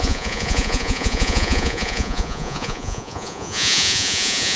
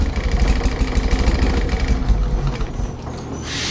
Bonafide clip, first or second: second